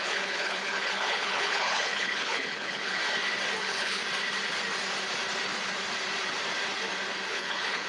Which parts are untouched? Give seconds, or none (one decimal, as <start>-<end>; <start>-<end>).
3.0-3.6; 4.0-7.3

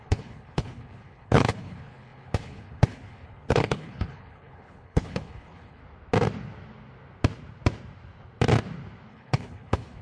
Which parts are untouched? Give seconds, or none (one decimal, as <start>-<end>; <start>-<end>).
5.8-9.1

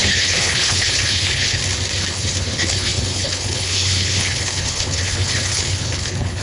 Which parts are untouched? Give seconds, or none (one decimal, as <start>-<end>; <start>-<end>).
1.6-2.1